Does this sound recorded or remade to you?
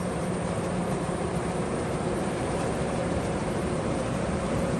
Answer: remade